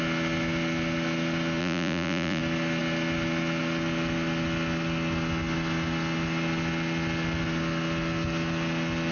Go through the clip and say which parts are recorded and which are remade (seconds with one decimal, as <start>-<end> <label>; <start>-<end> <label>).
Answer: 0.0-1.6 recorded; 1.6-2.4 remade; 2.4-9.1 recorded